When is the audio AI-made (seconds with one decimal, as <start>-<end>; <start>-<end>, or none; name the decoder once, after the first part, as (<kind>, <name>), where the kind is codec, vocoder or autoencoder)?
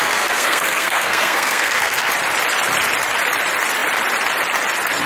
0.0-2.1 (codec, SNAC)